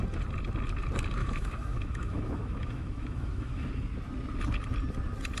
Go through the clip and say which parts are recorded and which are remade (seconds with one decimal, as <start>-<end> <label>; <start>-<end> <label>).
0.0-1.2 recorded; 1.2-3.7 remade; 3.7-5.4 recorded